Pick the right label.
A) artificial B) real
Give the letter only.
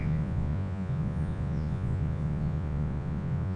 A